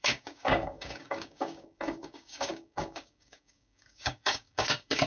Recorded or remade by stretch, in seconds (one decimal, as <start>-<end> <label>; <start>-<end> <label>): 0.0-5.1 remade